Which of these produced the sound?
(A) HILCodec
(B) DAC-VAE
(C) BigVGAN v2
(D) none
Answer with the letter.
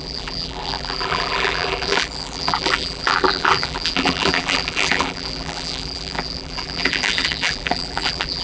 C